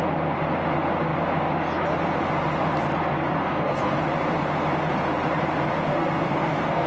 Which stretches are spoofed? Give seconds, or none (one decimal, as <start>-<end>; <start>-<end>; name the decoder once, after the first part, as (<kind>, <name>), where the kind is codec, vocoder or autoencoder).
3.4-4.0 (codec, SNAC); 5.9-6.9